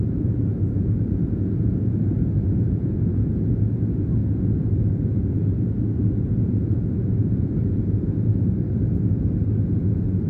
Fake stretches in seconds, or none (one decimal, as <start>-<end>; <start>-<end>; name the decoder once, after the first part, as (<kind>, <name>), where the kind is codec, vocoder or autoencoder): 0.0-8.3 (vocoder, Vocos); 9.7-10.3